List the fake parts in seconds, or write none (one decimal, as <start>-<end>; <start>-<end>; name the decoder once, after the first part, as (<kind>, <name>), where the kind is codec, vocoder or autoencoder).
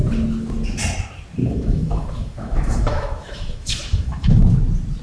1.4-4.4 (autoencoder, DAC-VAE)